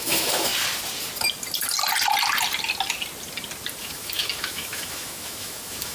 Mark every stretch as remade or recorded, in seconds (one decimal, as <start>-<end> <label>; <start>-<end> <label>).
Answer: 0.0-0.5 remade; 0.5-3.8 recorded; 3.8-5.9 remade